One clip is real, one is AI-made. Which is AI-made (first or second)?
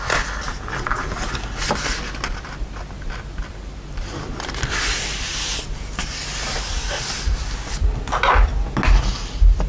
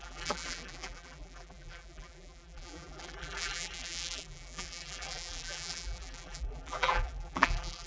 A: second